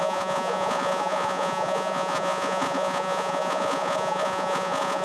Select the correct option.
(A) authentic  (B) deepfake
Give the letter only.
B